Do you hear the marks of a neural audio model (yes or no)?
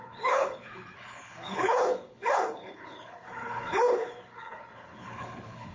yes